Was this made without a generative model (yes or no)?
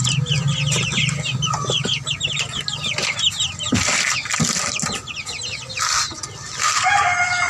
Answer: yes